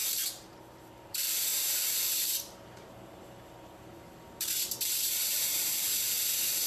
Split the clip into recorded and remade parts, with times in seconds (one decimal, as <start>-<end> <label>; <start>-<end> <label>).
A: 0.0-6.7 remade